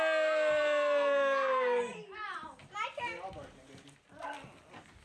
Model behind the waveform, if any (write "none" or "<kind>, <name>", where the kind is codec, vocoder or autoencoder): none